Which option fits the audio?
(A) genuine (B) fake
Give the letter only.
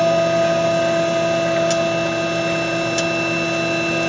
A